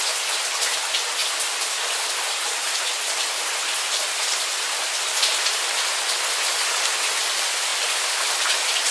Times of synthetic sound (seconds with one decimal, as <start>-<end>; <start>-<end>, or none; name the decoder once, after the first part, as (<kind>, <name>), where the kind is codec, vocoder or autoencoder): none